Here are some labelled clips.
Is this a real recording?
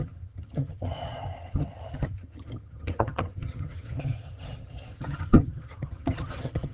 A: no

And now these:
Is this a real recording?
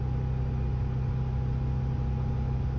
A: yes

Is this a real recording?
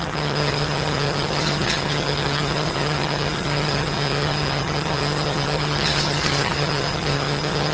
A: no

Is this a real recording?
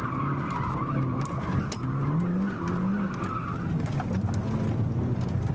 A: yes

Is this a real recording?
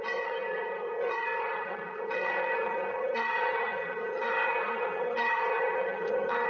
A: no